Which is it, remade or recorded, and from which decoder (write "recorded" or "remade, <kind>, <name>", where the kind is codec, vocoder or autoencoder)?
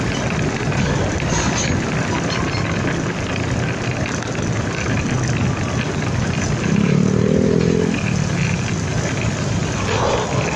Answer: recorded